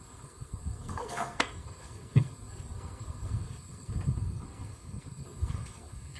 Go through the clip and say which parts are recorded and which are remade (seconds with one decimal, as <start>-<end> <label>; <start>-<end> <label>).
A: 0.0-6.2 remade

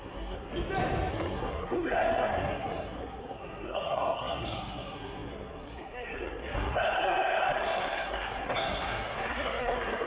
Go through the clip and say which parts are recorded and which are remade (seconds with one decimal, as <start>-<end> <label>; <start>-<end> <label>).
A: 0.0-0.5 remade; 0.5-1.1 recorded; 1.1-10.1 remade

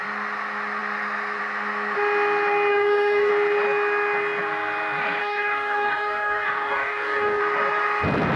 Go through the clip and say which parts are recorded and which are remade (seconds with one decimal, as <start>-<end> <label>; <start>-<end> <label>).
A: 0.0-2.7 recorded; 2.7-3.3 remade; 3.3-5.2 recorded; 5.2-7.4 remade; 7.4-8.4 recorded

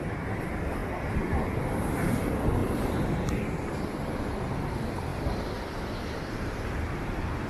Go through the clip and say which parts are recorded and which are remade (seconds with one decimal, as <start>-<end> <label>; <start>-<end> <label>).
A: 0.0-2.6 recorded; 2.6-3.4 remade; 3.4-5.1 recorded; 5.1-7.5 remade

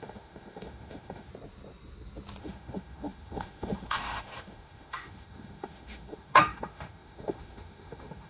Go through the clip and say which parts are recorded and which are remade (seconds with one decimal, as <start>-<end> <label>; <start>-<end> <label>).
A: 0.0-1.3 remade; 1.3-2.4 recorded; 2.4-8.3 remade

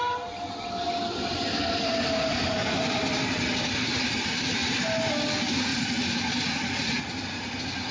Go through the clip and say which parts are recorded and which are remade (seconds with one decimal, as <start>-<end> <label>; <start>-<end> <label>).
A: 0.0-7.9 recorded